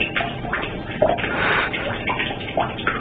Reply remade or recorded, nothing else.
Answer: recorded